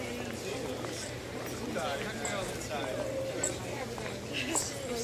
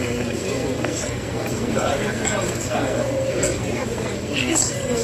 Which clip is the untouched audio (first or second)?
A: first